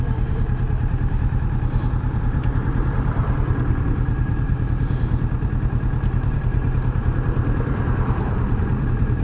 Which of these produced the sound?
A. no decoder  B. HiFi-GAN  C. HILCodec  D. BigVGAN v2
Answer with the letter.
D